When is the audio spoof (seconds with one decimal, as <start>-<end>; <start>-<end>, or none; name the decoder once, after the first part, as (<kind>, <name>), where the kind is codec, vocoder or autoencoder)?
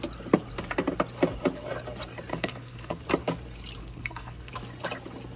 2.3-3.0 (codec, SNAC); 3.8-4.5